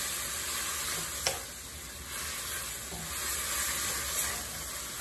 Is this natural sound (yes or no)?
yes